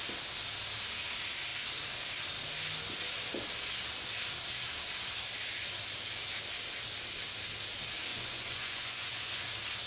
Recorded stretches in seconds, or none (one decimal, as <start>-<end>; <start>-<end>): 0.0-8.1; 9.5-9.9